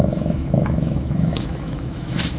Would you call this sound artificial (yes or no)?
yes